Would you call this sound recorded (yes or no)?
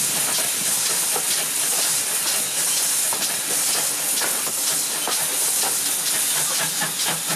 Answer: yes